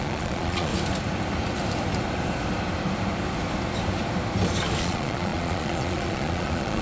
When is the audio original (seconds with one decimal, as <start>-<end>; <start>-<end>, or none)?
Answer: 0.7-4.8